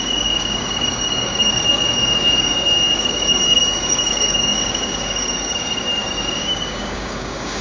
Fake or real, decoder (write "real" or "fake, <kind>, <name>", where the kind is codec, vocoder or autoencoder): fake, codec, DAC